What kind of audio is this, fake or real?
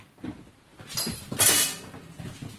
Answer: real